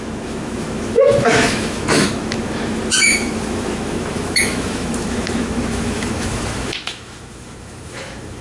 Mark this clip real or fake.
fake